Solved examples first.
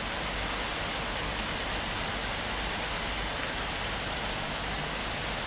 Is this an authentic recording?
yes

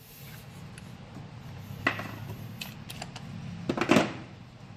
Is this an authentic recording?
yes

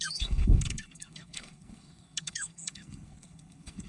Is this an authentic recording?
no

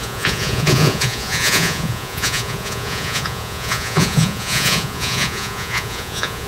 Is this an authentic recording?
no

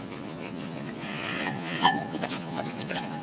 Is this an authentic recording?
no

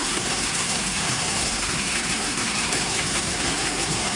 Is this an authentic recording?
no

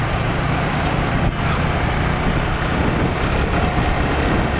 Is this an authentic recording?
yes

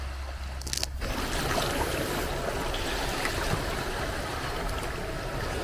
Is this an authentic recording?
yes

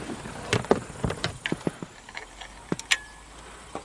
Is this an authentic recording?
yes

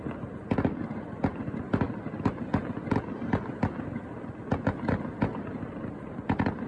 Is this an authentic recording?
yes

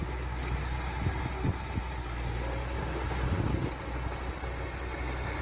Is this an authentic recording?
yes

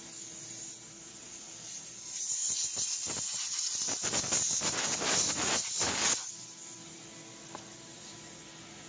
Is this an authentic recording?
yes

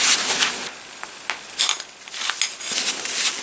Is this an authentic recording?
yes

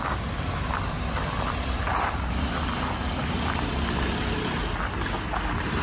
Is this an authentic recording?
yes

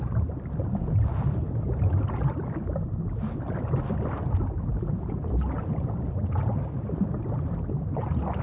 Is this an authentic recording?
yes